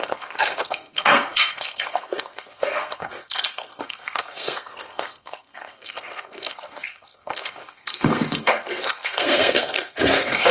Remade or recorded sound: remade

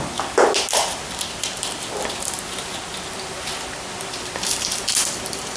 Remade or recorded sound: recorded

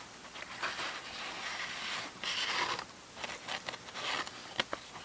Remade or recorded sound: recorded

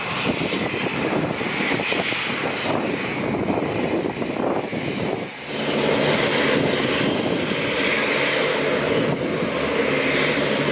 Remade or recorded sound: recorded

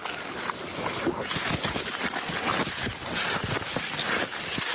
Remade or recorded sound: recorded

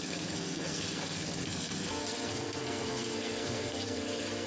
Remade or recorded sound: remade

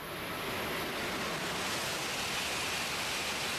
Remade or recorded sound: recorded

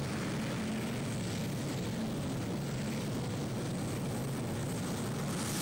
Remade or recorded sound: recorded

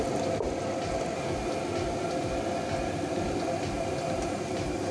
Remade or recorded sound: recorded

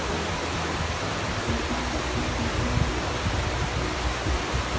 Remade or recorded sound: recorded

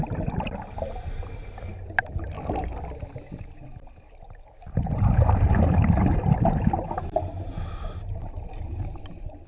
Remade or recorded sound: recorded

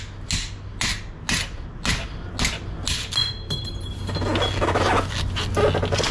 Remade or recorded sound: recorded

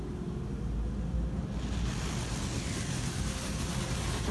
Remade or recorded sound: recorded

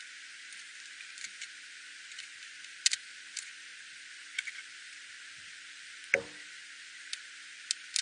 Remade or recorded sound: recorded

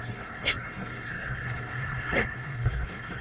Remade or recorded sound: remade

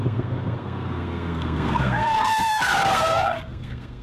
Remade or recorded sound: remade